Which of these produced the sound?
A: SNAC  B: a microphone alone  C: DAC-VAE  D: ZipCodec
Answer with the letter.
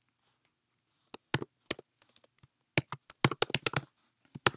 B